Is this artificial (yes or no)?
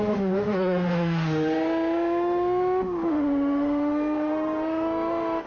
yes